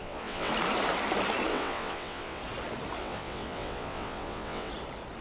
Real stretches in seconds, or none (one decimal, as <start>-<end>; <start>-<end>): 0.5-1.5; 2.4-3.0; 4.7-5.2